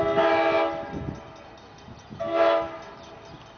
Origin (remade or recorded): recorded